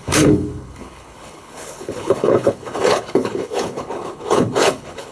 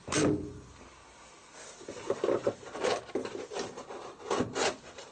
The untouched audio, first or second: second